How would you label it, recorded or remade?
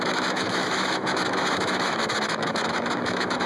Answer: remade